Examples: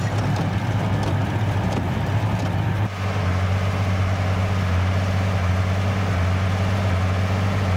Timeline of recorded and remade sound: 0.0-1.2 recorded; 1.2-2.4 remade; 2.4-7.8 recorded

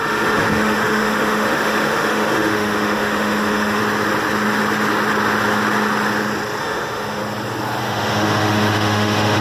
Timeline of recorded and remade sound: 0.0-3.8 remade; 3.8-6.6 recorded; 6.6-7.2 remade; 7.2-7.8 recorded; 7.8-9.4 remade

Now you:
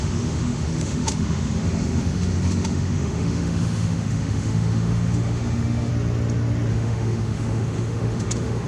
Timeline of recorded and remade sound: 0.0-5.9 remade; 5.9-6.7 recorded; 6.7-8.7 remade